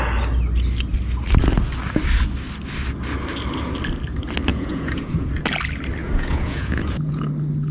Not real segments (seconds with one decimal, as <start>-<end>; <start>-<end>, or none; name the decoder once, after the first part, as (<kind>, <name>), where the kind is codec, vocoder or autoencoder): 4.5-5.3 (vocoder, Vocos); 6.0-7.2